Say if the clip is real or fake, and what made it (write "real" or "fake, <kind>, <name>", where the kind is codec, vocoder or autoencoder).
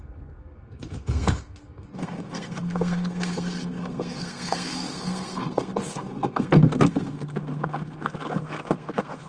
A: fake, codec, SNAC